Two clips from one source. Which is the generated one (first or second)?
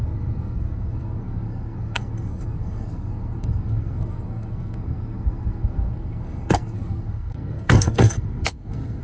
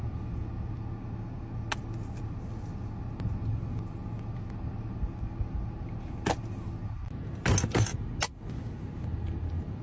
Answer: first